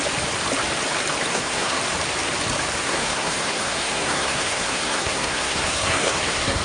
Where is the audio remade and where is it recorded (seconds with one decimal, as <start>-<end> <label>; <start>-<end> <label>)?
0.0-1.3 recorded; 1.3-1.8 remade; 1.8-2.8 recorded; 2.8-6.6 remade